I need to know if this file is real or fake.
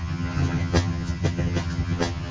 fake